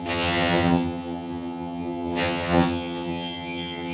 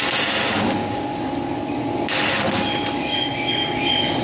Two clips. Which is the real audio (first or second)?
second